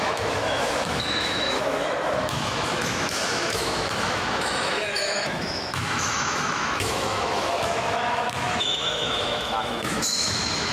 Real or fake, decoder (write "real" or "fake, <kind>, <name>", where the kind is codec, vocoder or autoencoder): fake, autoencoder, DAC-VAE